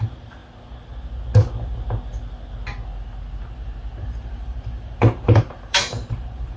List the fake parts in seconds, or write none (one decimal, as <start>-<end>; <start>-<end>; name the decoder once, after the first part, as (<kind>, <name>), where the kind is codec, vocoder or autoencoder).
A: 0.0-0.4 (vocoder, BigVGAN v2); 4.0-6.6